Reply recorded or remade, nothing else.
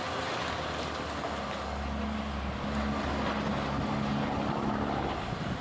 recorded